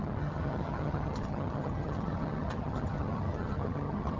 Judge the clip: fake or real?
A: fake